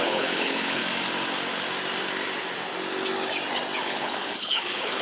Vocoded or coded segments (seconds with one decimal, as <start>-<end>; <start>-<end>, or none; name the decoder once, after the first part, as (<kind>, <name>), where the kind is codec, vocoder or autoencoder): 0.0-0.8 (codec, HILCodec); 3.8-5.0